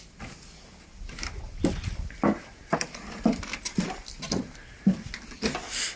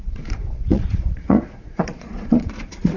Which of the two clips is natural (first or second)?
first